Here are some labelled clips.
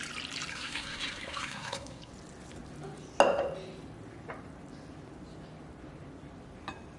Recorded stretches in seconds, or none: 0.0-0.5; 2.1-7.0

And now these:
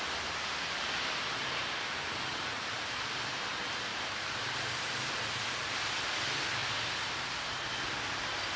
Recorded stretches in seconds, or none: 0.0-2.3; 3.5-3.9; 5.0-8.6

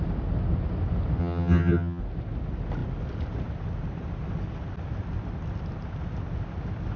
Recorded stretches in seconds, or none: 0.0-1.2; 2.0-7.0

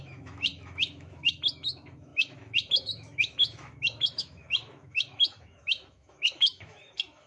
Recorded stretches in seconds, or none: none

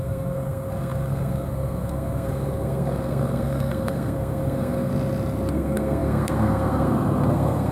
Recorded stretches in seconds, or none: 4.9-5.5

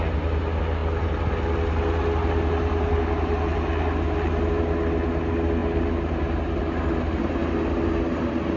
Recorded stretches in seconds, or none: 0.0-8.6

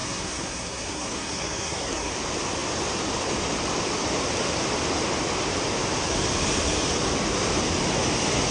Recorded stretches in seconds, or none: 2.1-8.5

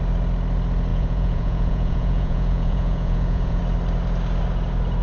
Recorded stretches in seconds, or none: 0.0-0.9; 3.6-5.0